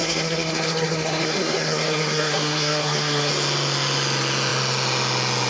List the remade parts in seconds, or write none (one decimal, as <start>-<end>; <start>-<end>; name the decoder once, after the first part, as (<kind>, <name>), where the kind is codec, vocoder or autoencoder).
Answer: 0.0-3.3 (codec, SNAC)